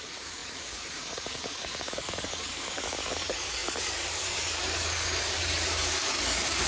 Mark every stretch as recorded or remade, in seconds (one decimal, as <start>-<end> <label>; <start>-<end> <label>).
0.0-6.7 remade